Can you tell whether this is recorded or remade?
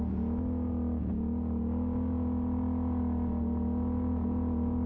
recorded